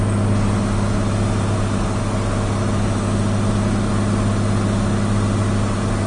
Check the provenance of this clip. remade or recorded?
recorded